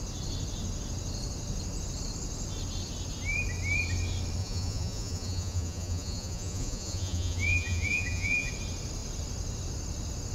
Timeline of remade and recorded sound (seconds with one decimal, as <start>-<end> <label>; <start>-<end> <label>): 0.0-4.4 recorded; 4.4-8.5 remade; 8.5-10.3 recorded